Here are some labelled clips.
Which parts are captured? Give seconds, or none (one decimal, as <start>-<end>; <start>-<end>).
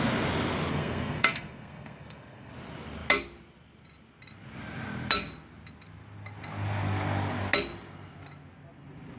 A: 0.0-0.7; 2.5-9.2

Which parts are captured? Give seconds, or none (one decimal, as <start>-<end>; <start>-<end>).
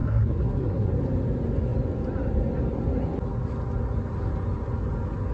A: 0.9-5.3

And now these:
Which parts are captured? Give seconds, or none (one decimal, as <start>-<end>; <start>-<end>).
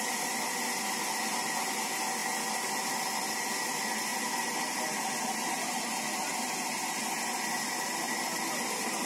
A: 0.0-9.1